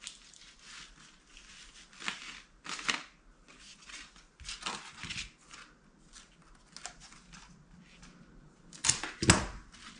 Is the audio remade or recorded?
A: recorded